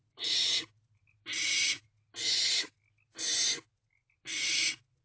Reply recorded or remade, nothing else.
recorded